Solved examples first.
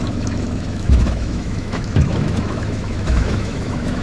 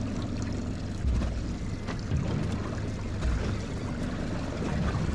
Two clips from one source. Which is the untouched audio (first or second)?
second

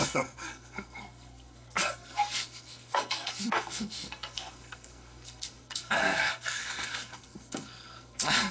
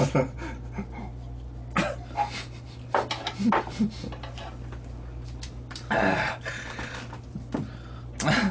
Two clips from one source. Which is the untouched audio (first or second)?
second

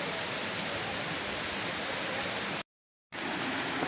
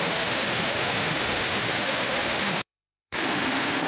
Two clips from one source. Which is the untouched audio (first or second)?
first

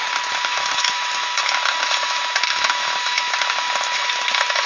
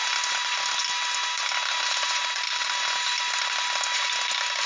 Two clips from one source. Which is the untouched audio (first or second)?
second